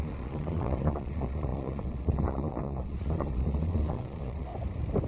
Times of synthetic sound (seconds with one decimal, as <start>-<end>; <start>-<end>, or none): 0.0-4.5